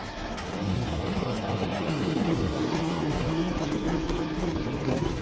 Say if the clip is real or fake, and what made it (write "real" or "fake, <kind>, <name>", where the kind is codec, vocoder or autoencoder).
fake, codec, SNAC